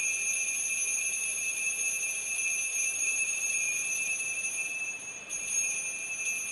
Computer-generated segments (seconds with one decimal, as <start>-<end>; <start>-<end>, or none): 2.7-5.8